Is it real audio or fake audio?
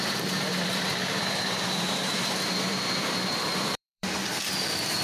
fake